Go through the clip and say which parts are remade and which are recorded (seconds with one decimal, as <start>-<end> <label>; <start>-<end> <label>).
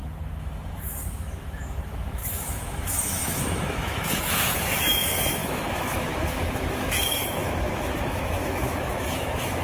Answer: 0.0-9.6 remade